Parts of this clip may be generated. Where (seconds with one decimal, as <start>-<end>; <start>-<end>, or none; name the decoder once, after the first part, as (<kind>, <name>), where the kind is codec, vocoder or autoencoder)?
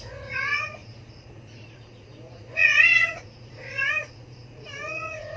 0.0-5.4 (vocoder, Vocos)